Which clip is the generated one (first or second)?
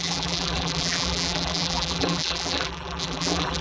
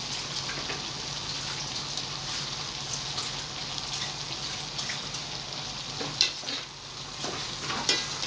first